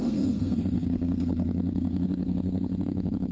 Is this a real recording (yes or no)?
no